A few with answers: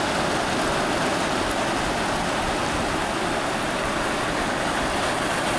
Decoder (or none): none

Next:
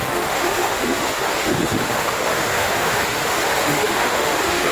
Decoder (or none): autoencoder, DAC-VAE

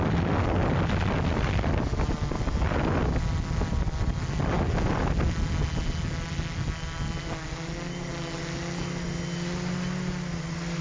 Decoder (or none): none